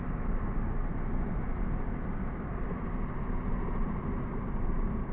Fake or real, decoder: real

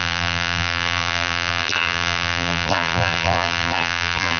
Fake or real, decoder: fake, vocoder, BigVGAN v2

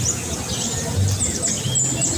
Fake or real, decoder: real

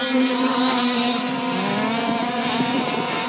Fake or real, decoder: fake, vocoder, BigVGAN v2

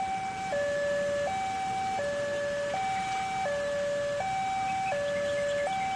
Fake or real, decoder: real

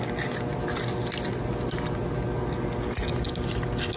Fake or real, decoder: real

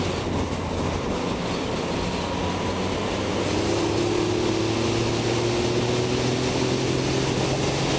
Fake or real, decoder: real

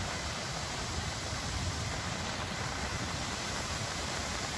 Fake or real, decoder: fake, vocoder, BigVGAN v2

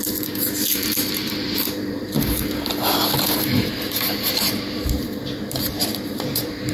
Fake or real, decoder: fake, vocoder, BigVGAN v2